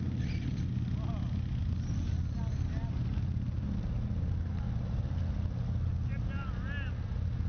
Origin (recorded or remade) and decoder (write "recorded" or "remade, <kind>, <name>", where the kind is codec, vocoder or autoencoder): recorded